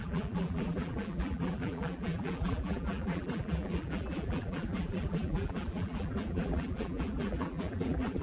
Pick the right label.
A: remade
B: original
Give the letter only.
A